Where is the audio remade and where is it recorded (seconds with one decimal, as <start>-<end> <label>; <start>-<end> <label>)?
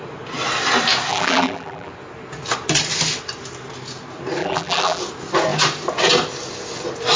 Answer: 0.0-1.1 recorded; 1.1-1.9 remade; 1.9-4.4 recorded; 4.4-5.0 remade; 5.0-7.2 recorded